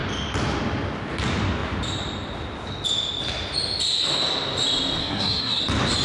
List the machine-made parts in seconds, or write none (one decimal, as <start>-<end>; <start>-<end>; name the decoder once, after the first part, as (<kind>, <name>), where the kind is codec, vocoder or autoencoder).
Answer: 5.0-5.6 (codec, SNAC)